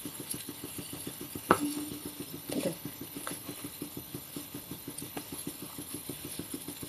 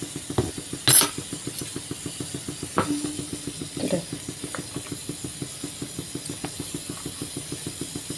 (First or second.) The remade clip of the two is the first